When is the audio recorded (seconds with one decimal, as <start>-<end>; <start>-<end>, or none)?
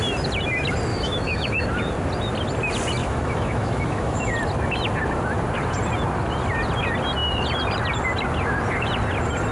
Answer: 0.0-0.9; 1.6-3.0; 4.3-9.5